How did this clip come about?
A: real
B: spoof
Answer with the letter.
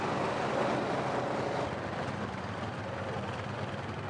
A